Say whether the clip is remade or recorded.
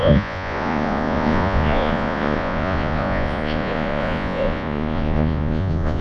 remade